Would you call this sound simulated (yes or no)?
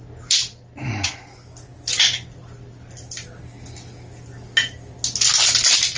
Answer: no